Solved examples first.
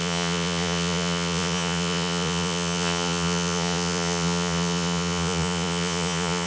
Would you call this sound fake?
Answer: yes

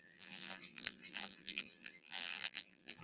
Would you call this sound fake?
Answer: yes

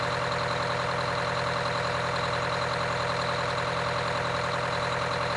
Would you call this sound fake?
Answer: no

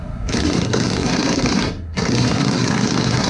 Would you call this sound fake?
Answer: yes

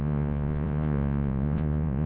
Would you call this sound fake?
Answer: yes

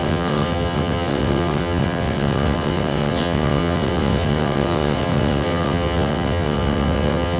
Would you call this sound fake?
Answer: yes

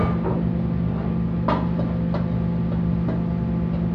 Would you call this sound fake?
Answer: no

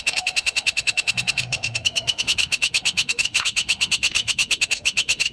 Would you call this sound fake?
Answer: yes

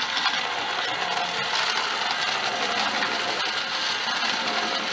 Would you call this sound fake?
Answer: no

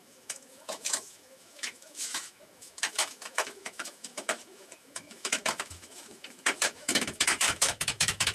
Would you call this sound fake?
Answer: yes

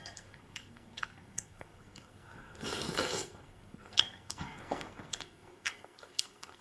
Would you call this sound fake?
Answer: yes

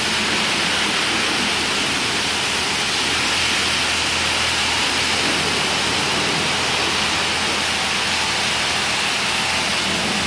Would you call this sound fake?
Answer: no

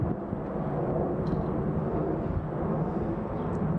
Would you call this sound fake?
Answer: no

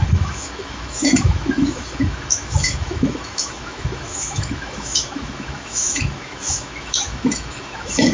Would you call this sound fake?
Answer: yes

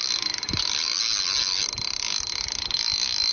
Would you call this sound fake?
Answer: no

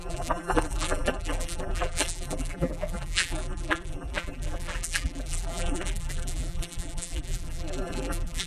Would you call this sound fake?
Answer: yes